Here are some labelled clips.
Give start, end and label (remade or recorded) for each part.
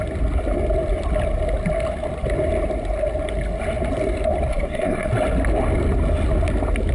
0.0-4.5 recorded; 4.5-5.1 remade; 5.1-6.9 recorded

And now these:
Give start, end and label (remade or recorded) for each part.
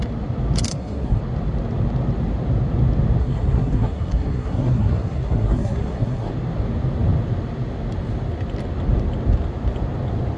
0.0-0.7 recorded; 0.7-1.2 remade; 1.2-3.2 recorded; 3.2-6.3 remade; 6.3-10.4 recorded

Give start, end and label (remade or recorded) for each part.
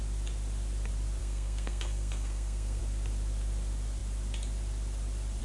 0.0-1.2 recorded; 1.2-2.8 remade; 2.8-5.4 recorded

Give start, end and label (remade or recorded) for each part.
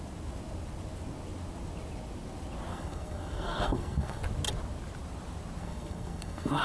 0.0-2.7 recorded; 2.7-4.2 remade; 4.2-5.6 recorded; 5.6-6.6 remade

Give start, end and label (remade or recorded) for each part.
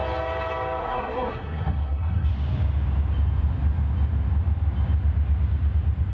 0.0-0.8 recorded; 0.8-2.3 remade; 2.3-6.1 recorded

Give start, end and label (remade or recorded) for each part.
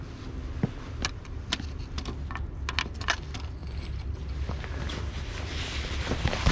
0.0-6.5 recorded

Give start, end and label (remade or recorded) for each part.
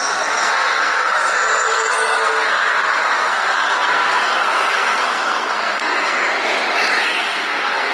0.0-6.3 remade; 6.3-7.0 recorded; 7.0-7.9 remade